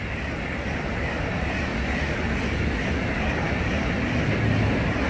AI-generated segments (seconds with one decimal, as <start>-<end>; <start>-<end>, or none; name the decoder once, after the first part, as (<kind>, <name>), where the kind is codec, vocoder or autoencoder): none

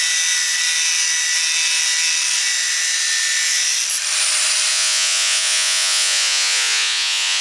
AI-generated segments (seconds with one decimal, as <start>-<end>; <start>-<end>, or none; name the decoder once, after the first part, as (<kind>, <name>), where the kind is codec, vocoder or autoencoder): 4.7-7.4 (vocoder, Vocos)

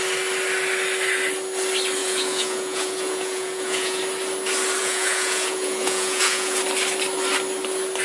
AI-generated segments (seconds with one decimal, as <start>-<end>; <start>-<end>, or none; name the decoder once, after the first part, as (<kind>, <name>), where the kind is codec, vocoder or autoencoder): 2.0-4.0 (vocoder, Vocos); 4.8-6.6

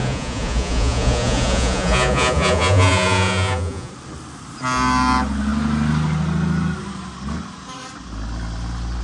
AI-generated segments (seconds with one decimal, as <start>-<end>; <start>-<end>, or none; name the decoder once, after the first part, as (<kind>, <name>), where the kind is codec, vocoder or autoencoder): 0.0-3.9 (vocoder, Vocos)